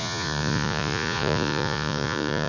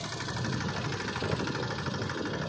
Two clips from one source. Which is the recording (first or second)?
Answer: second